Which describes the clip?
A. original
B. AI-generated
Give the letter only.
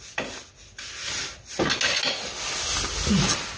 A